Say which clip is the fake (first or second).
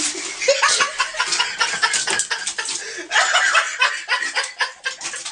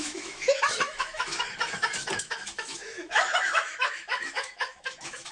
second